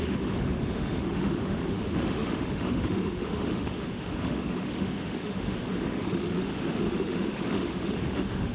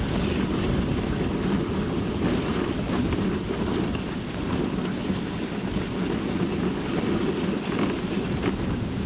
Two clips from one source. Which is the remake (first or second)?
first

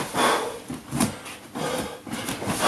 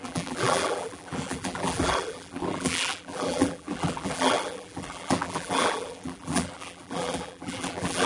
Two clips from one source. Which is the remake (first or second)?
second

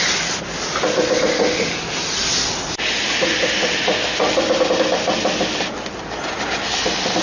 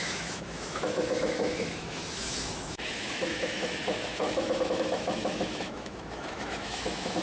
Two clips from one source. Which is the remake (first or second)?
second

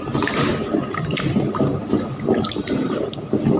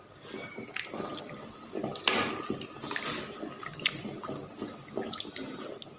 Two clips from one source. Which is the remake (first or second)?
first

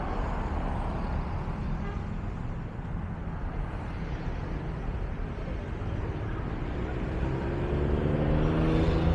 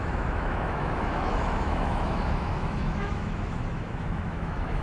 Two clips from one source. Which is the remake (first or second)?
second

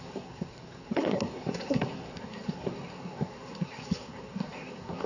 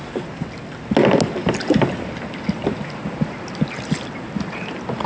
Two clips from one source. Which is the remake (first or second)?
first